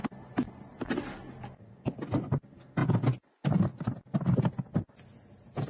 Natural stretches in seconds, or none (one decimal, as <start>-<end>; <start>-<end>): 0.0-5.7